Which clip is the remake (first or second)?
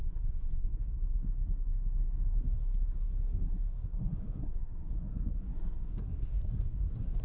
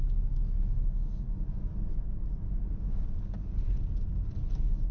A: first